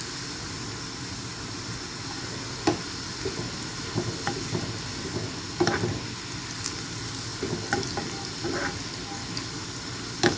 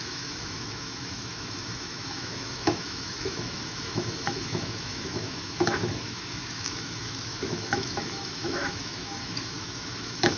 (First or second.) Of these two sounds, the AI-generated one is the second